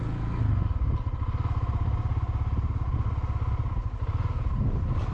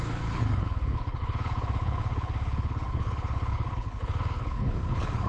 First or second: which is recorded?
first